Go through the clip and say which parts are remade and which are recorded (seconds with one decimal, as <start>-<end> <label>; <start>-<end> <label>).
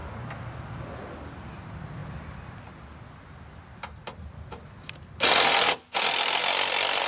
0.0-7.1 recorded